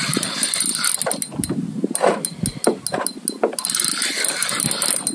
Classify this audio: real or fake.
real